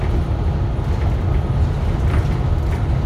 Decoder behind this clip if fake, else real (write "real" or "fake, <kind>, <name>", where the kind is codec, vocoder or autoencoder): real